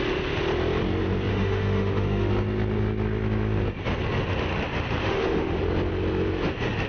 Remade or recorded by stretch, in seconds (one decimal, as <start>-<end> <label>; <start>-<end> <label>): 0.0-1.3 recorded; 1.3-2.3 remade; 2.3-5.0 recorded; 5.0-5.6 remade; 5.6-6.9 recorded